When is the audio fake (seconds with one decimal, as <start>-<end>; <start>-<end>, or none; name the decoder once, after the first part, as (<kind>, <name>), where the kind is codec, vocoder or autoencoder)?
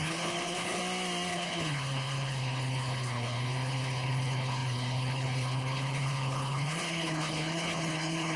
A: 0.0-0.8 (codec, HILCodec); 1.3-8.4